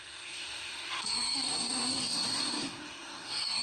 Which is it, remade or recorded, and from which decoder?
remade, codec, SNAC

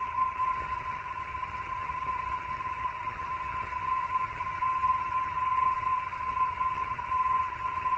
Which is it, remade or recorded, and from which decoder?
remade, vocoder, HiFi-GAN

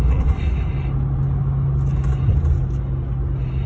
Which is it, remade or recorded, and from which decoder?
recorded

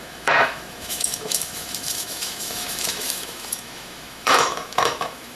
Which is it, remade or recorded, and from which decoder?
remade, autoencoder, DAC-VAE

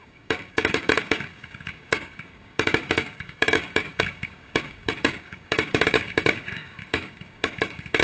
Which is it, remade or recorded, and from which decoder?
remade, codec, DAC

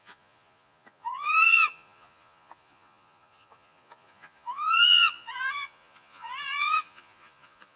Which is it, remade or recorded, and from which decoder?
remade, vocoder, Vocos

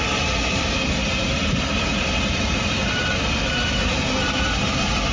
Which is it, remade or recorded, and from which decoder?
remade, vocoder, BigVGAN v2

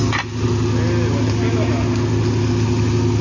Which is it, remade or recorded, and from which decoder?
recorded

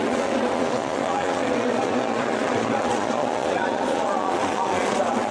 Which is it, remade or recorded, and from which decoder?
remade, vocoder, Vocos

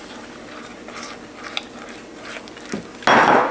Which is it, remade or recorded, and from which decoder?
recorded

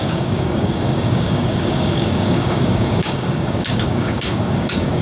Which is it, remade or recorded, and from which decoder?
remade, codec, DAC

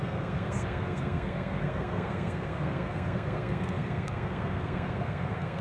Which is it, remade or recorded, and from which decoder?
remade, codec, SNAC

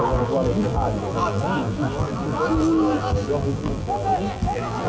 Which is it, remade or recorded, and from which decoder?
remade, vocoder, BigVGAN v2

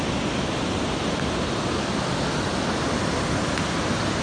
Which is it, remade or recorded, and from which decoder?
recorded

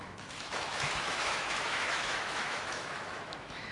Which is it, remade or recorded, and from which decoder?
remade, autoencoder, DAC-VAE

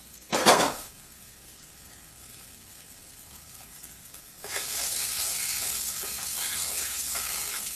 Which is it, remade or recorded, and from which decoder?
remade, codec, SNAC